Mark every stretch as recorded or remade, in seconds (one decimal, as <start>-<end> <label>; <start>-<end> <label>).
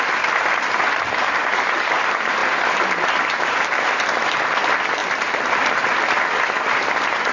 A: 0.0-7.3 recorded